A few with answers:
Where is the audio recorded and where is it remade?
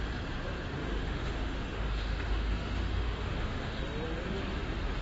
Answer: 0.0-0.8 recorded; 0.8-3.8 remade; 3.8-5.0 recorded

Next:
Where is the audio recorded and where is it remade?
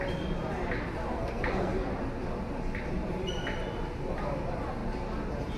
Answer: 0.0-1.1 recorded; 1.1-1.9 remade; 1.9-5.6 recorded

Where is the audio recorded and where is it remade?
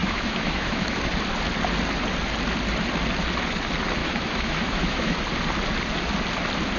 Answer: 0.0-1.0 remade; 1.0-4.0 recorded; 4.0-5.2 remade; 5.2-6.8 recorded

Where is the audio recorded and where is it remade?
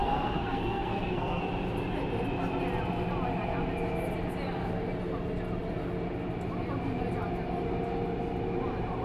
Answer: 0.0-1.4 remade; 1.4-9.0 recorded